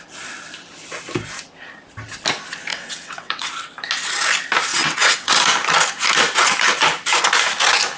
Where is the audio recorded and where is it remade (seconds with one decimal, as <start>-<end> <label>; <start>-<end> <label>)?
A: 0.0-2.7 recorded; 2.7-3.5 remade; 3.5-4.7 recorded; 4.7-5.3 remade; 5.3-8.0 recorded